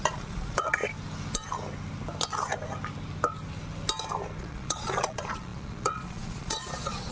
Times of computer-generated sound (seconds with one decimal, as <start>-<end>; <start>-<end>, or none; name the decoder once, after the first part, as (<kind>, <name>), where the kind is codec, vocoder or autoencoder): 0.0-0.8 (vocoder, Vocos); 4.4-7.1